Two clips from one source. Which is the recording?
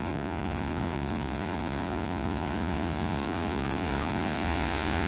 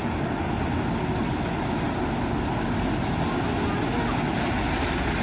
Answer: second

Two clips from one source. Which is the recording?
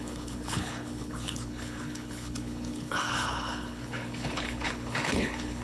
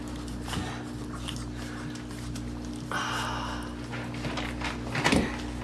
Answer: second